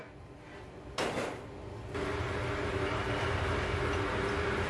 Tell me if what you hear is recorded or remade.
recorded